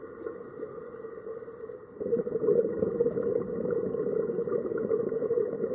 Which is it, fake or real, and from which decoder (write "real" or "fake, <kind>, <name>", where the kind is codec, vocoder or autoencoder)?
real